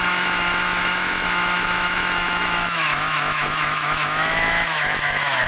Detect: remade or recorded remade